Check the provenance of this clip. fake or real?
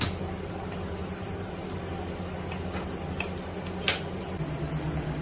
real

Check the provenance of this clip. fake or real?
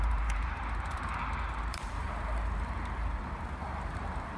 fake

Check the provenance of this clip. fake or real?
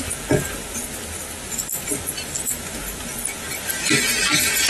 real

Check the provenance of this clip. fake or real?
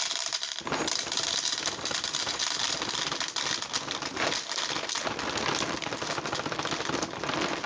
real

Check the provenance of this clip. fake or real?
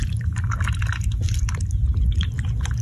real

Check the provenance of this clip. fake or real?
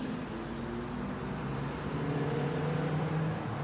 real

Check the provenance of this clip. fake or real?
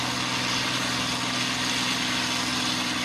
real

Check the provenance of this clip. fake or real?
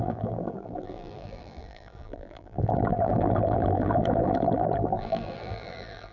fake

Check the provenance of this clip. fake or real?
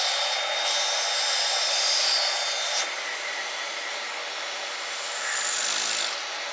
fake